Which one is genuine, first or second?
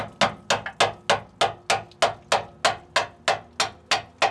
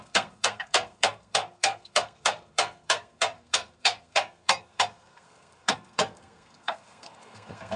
first